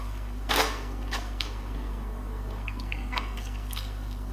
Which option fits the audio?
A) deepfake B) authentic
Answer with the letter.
A